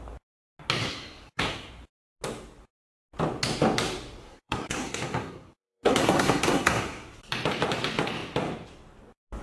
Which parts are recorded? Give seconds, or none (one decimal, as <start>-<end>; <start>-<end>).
0.0-0.8; 1.7-4.2; 7.1-9.4